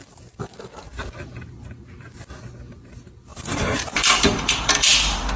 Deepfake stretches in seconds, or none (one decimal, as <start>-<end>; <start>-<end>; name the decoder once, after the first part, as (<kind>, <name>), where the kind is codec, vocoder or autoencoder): 3.3-5.4 (vocoder, BigVGAN v2)